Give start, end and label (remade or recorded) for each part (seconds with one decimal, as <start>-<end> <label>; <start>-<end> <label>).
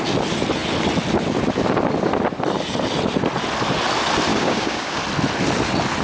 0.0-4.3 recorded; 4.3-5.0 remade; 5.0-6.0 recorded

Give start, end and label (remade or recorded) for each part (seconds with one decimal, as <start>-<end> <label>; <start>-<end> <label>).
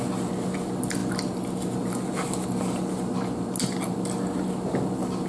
0.0-5.3 recorded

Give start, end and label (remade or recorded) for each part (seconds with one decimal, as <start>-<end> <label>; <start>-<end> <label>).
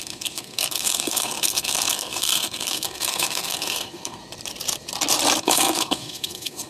0.0-4.2 remade; 4.2-5.4 recorded; 5.4-6.7 remade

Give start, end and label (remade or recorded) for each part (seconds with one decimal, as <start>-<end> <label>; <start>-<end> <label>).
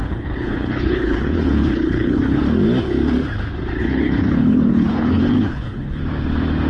0.0-2.4 remade; 2.4-3.8 recorded; 3.8-6.0 remade; 6.0-6.7 recorded